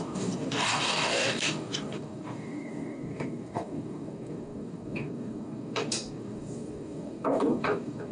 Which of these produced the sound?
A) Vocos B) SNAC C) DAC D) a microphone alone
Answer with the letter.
C